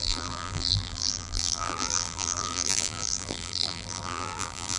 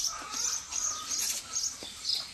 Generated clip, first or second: first